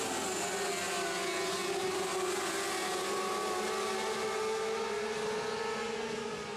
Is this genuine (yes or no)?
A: yes